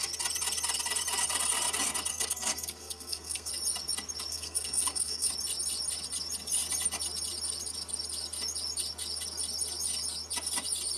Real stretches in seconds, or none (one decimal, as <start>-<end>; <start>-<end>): 0.0-2.1; 3.5-4.3; 5.3-11.0